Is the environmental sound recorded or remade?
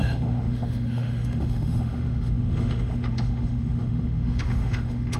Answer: remade